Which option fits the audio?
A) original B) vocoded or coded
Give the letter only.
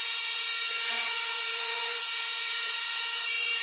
B